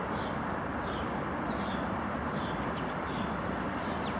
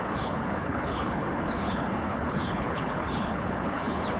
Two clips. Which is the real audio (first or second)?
first